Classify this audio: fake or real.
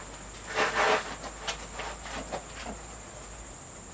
real